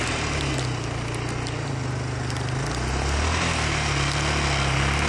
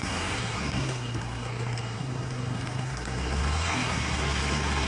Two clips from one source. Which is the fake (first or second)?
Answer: second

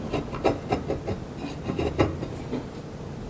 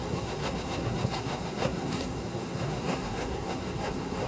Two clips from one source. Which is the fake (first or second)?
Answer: second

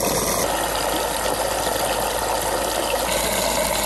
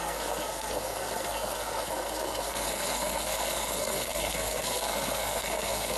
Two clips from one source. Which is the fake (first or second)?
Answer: second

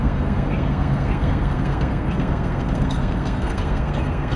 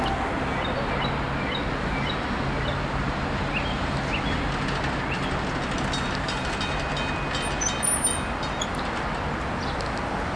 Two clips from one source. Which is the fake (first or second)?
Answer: first